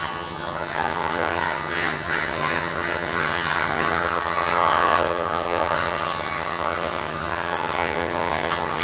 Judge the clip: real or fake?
fake